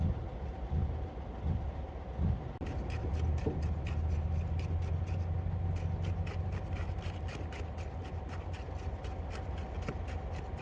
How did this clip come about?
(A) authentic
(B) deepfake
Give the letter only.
A